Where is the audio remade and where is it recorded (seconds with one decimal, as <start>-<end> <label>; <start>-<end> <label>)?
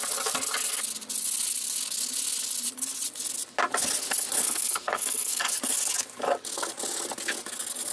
0.0-4.4 recorded; 4.4-5.5 remade; 5.5-7.9 recorded